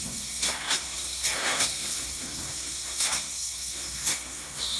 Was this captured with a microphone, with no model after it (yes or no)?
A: no